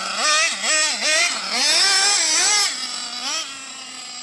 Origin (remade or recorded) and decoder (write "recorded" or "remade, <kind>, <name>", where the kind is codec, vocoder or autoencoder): recorded